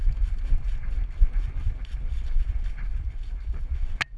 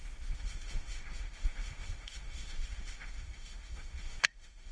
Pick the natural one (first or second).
first